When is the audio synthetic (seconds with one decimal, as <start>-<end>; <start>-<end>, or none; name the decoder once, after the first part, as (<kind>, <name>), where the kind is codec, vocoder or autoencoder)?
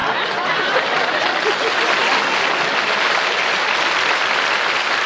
none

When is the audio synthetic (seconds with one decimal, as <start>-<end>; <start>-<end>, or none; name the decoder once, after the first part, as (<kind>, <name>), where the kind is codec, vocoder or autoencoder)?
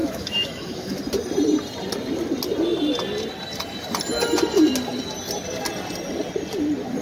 0.0-1.0 (autoencoder, DAC-VAE)